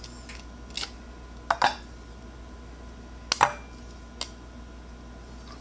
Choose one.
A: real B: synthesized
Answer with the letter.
A